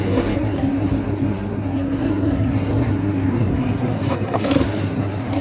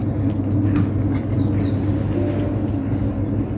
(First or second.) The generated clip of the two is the first